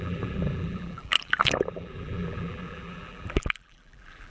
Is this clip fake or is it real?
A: fake